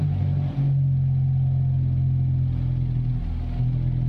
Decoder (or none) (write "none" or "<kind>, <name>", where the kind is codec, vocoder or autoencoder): none